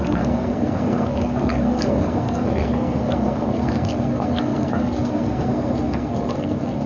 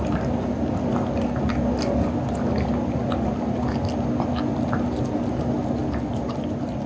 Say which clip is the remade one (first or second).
first